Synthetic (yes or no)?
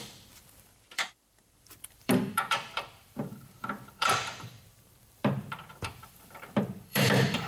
yes